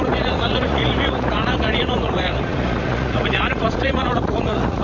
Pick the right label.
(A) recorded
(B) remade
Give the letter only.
B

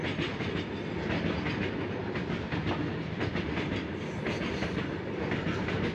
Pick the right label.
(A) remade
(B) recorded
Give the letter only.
B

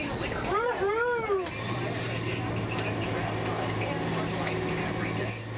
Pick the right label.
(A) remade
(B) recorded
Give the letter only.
B